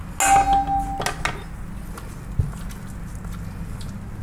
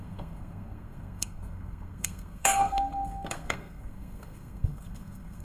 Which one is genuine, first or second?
first